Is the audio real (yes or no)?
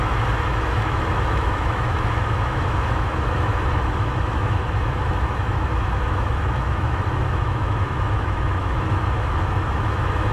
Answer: no